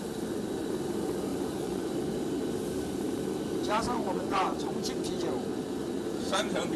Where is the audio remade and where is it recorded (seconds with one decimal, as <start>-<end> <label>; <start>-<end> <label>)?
0.0-1.3 recorded; 1.3-1.9 remade; 1.9-4.0 recorded; 4.0-4.7 remade; 4.7-5.5 recorded; 5.5-6.8 remade